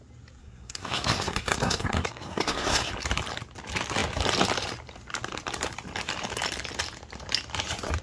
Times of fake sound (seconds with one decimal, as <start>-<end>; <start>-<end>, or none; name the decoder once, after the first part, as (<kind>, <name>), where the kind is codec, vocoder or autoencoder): 0.4-2.9 (codec, SNAC)

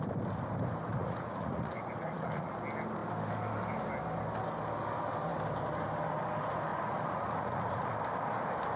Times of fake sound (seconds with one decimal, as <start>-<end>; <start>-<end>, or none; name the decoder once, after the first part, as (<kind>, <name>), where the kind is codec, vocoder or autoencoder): 0.9-2.5 (vocoder, Vocos); 6.7-7.9

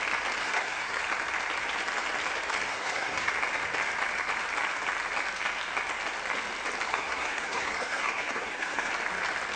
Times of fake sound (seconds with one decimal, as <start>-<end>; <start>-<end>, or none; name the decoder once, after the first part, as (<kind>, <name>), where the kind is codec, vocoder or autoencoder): 0.4-1.0 (codec, SNAC); 2.7-3.3; 6.9-8.9

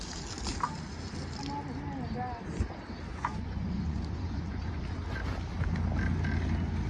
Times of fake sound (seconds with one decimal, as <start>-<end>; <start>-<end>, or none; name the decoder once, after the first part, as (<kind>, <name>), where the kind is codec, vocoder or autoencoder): 3.1-4.8 (vocoder, Vocos)

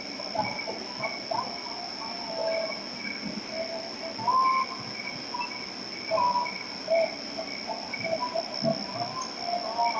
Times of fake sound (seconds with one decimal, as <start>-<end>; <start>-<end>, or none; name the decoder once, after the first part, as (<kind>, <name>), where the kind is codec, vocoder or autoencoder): none

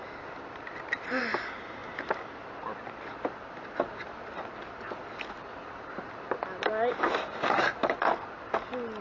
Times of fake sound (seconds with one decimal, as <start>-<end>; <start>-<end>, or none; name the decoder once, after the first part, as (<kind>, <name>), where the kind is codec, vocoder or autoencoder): none

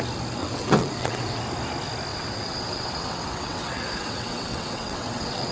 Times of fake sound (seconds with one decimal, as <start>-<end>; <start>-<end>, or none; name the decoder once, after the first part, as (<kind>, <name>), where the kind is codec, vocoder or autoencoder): 0.4-1.4 (vocoder, WaveNeXt); 2.1-5.5